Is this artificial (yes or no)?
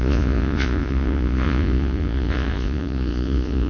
yes